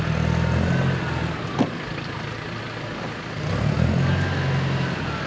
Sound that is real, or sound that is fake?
real